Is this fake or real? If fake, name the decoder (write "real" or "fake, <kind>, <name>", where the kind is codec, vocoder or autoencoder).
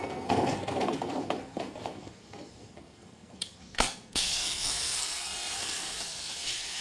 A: fake, codec, SNAC